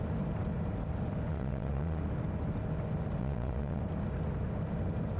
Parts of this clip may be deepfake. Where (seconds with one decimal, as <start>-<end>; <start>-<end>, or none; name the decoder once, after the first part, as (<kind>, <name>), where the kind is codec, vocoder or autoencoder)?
1.3-2.0 (vocoder, Vocos); 3.2-3.8